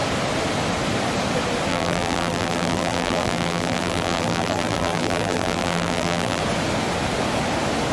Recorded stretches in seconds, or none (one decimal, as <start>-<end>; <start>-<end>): 0.0-1.7; 6.4-7.9